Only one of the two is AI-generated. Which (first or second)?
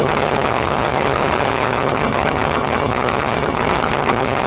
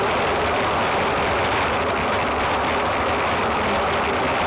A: first